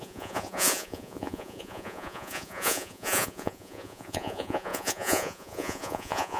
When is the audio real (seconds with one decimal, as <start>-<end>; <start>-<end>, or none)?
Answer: none